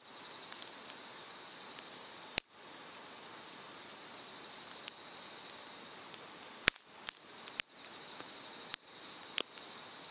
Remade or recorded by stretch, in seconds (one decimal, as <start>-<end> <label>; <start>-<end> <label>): 0.0-10.1 recorded